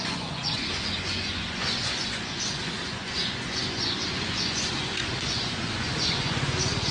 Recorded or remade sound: remade